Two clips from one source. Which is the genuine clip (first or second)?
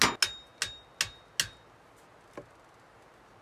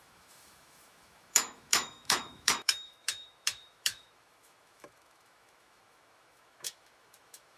first